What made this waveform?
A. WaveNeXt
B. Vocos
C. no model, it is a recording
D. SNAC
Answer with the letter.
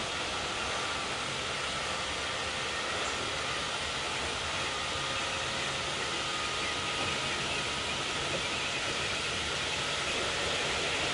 C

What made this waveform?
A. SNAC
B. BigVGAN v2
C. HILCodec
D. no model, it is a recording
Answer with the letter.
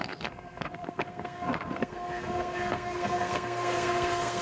A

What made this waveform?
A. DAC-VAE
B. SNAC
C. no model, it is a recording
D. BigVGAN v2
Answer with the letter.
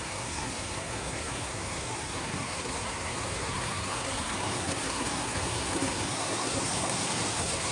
B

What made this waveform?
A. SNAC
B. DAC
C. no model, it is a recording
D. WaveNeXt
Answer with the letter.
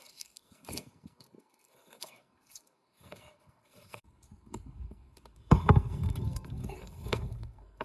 A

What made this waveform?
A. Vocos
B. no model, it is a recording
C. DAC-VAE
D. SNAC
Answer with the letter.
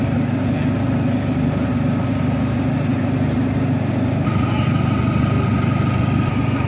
B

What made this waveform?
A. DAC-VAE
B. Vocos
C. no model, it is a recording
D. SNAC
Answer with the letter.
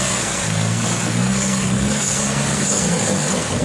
D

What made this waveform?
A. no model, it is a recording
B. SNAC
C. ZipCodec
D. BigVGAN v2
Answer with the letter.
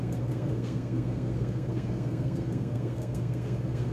B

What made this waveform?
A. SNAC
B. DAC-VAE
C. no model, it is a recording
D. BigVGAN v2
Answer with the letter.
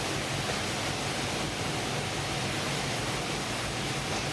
C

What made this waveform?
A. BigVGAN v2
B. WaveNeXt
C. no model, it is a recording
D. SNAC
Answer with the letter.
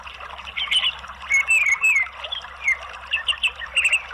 C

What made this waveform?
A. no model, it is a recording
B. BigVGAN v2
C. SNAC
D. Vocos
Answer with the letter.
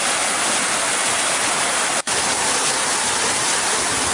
A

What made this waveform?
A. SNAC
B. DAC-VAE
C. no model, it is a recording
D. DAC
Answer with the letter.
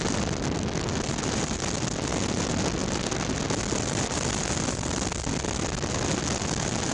C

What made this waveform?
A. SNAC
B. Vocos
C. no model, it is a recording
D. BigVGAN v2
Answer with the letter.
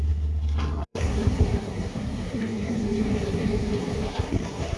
A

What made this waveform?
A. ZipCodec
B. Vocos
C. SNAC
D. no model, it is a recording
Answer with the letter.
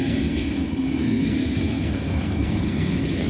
C